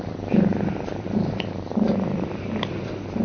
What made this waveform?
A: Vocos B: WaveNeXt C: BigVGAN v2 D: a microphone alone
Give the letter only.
C